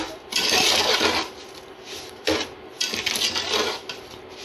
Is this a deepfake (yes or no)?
no